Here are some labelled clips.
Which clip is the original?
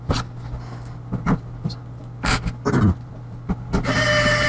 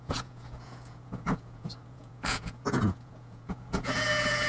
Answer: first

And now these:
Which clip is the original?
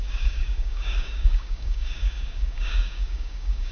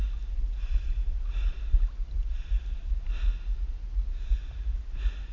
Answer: second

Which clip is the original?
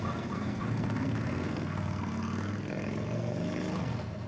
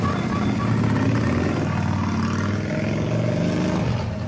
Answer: second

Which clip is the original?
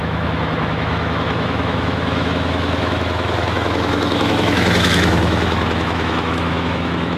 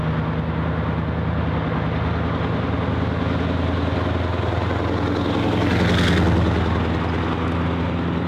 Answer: second